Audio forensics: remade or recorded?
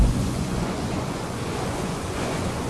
remade